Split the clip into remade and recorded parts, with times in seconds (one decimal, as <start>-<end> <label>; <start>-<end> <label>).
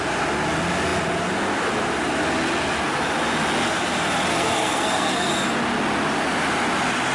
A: 0.0-4.3 recorded; 4.3-5.3 remade; 5.3-7.1 recorded